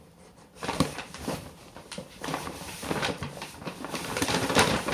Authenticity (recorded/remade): remade